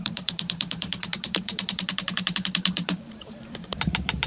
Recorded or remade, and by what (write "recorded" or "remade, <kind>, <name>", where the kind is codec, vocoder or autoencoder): remade, vocoder, BigVGAN v2